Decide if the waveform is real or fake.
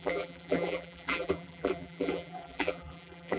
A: fake